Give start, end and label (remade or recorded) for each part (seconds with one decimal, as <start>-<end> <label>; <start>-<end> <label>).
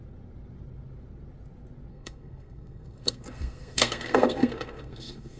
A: 0.0-1.9 recorded; 1.9-5.4 remade